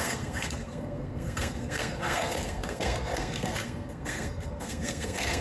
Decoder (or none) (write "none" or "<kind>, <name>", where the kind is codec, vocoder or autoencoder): codec, SNAC